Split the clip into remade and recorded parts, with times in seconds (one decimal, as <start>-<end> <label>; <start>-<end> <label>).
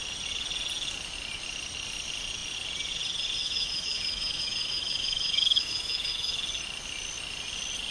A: 0.0-3.4 recorded; 3.4-6.4 remade; 6.4-7.9 recorded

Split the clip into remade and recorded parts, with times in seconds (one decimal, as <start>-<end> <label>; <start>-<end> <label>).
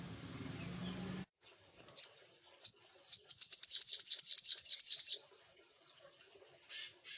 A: 0.0-4.7 recorded; 4.7-6.4 remade; 6.4-7.2 recorded